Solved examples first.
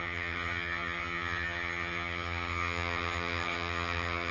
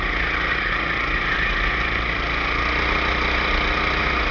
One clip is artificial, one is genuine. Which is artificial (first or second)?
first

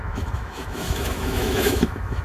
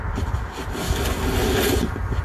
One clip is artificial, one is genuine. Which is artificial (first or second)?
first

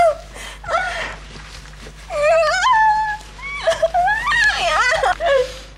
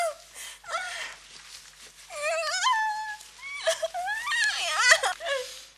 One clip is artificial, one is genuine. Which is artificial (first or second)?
first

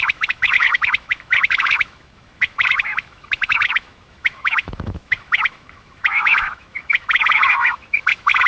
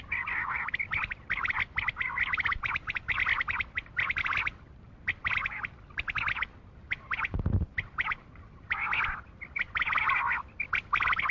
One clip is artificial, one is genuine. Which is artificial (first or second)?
first